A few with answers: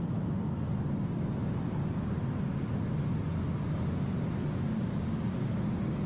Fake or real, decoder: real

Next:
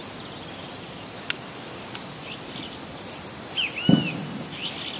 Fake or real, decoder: real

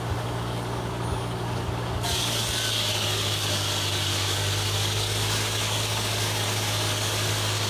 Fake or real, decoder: fake, codec, DAC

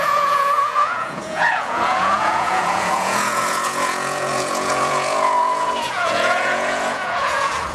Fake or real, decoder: fake, vocoder, Vocos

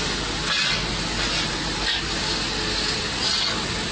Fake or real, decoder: real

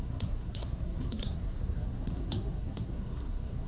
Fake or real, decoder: fake, codec, SNAC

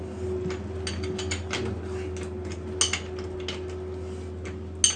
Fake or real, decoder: real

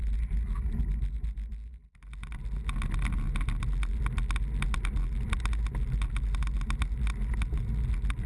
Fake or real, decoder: real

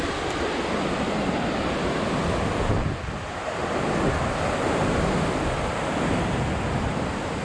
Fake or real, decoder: real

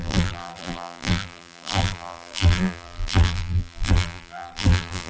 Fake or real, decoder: fake, vocoder, BigVGAN v2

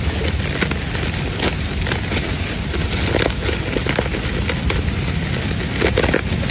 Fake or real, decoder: real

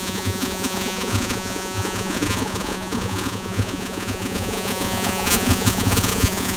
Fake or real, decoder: fake, vocoder, Vocos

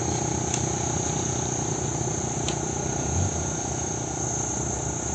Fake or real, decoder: real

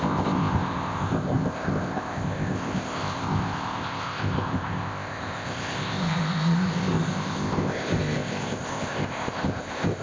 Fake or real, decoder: fake, codec, ZipCodec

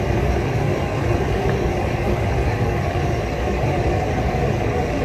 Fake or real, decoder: fake, codec, DAC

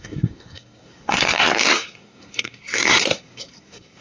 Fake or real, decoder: fake, codec, SNAC